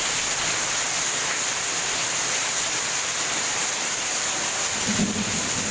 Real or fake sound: real